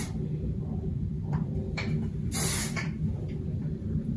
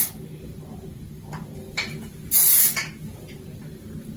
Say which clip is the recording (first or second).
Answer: second